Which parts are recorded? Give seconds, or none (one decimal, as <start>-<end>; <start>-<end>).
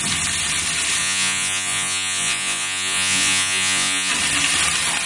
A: 0.0-1.0; 4.1-5.1